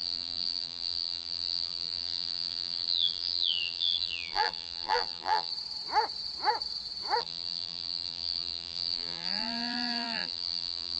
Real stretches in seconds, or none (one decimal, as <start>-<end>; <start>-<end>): 5.5-7.2

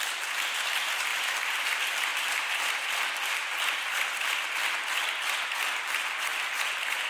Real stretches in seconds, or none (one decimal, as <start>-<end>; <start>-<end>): 0.0-2.1; 4.2-6.3

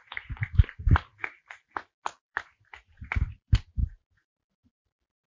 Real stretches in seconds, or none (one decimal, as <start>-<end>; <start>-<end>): 1.1-2.2

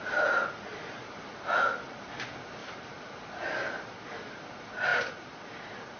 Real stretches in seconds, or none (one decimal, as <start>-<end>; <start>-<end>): 0.0-0.7; 1.9-2.6; 3.3-6.0

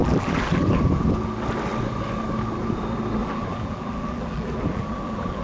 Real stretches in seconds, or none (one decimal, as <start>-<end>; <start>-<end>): 1.1-3.2

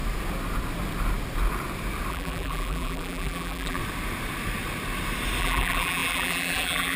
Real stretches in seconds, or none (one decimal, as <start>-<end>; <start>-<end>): 0.0-2.1; 3.8-5.4

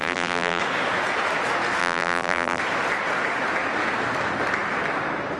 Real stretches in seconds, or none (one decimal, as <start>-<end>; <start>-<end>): 0.6-1.8; 2.6-5.4